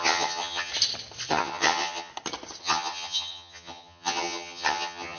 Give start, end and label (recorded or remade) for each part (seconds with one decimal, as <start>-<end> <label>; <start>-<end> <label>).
0.0-0.7 remade; 0.7-1.3 recorded; 1.3-2.1 remade; 2.1-2.6 recorded; 2.6-5.2 remade

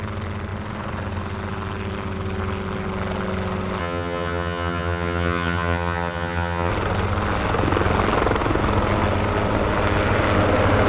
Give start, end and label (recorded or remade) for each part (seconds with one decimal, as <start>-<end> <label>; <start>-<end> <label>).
0.0-3.8 recorded; 3.8-6.7 remade; 6.7-10.9 recorded

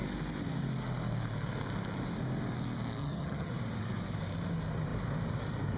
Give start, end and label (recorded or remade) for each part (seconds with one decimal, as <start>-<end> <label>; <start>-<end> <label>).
0.0-3.0 recorded; 3.0-3.5 remade; 3.5-5.8 recorded

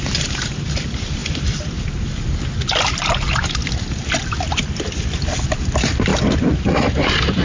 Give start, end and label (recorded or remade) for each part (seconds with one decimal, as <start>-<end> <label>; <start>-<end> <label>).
0.0-7.4 recorded